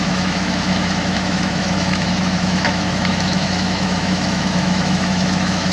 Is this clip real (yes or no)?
no